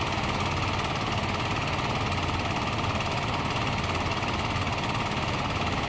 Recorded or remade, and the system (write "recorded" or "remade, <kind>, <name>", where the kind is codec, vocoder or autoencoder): recorded